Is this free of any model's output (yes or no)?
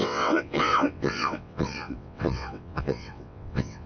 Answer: no